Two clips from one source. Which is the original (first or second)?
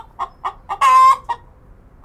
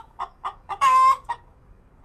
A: first